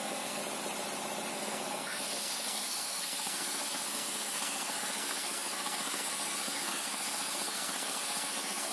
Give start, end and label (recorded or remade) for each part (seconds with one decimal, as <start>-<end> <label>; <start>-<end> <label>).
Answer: 0.0-0.4 remade; 0.4-1.3 recorded; 1.3-8.7 remade